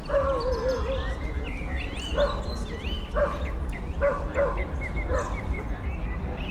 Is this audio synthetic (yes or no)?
no